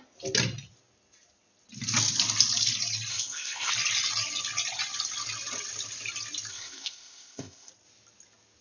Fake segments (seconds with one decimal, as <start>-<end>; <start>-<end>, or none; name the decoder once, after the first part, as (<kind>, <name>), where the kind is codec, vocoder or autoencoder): 3.1-3.7 (codec, ZipCodec); 6.5-7.7